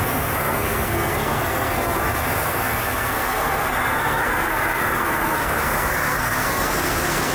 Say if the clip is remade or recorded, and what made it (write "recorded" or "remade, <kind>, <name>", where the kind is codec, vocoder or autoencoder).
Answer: remade, codec, SNAC